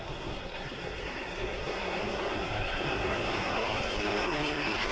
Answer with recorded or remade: remade